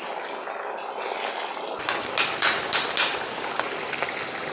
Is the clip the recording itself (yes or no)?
yes